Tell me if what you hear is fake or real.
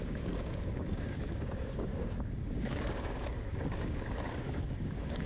fake